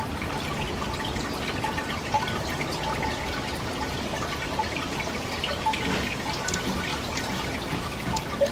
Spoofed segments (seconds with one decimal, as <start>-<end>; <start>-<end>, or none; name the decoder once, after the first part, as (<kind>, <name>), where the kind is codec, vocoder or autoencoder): none